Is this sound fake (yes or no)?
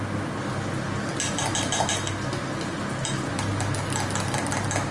no